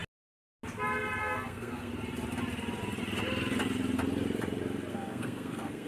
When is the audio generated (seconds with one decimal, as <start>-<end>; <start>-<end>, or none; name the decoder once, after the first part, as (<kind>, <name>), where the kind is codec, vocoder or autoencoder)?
1.2-1.9 (codec, SNAC); 4.9-5.9